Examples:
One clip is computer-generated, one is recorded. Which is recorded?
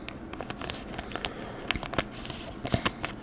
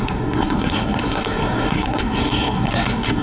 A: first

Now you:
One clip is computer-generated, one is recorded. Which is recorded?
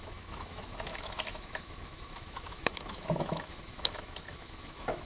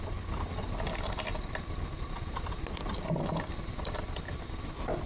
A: second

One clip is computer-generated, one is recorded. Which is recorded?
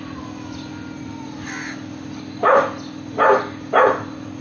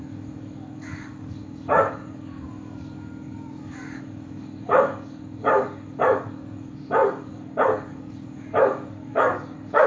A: first